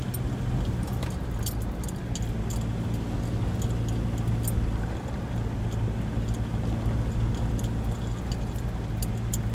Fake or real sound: real